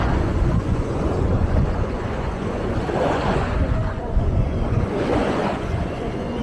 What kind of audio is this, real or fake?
fake